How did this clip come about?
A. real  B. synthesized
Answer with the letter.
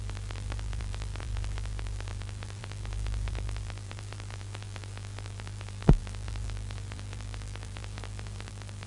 B